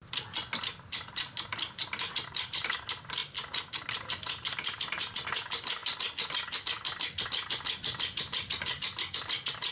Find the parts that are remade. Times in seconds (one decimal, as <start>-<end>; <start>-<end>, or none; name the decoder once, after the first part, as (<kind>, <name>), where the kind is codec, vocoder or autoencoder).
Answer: 0.0-5.8 (vocoder, BigVGAN v2); 7.5-9.7